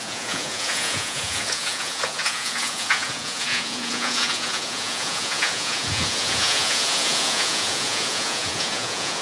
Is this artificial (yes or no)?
yes